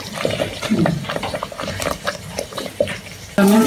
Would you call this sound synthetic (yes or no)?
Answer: no